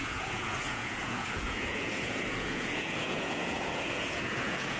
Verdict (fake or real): fake